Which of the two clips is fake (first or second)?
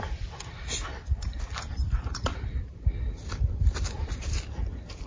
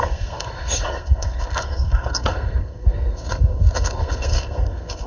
second